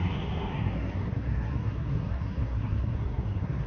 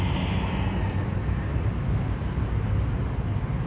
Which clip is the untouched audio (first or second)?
second